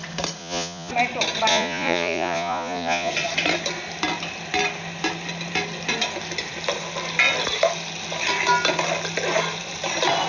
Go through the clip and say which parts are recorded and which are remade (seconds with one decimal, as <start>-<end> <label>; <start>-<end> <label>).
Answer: 0.0-0.4 recorded; 0.4-0.9 remade; 0.9-1.5 recorded; 1.5-3.1 remade; 3.1-10.3 recorded